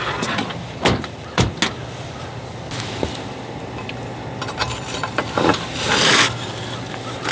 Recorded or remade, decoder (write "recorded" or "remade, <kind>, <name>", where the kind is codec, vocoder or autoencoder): recorded